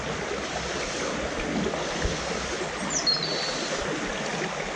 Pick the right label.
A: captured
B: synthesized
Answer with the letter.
A